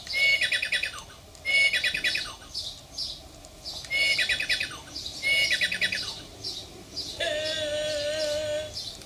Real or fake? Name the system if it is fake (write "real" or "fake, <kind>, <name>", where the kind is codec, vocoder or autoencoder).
real